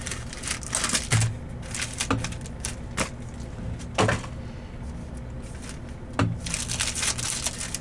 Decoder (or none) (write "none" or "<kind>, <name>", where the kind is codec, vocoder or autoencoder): none